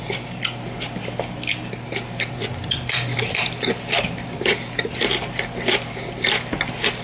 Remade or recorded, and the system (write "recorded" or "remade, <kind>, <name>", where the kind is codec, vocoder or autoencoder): recorded